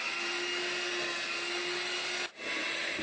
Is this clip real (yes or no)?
yes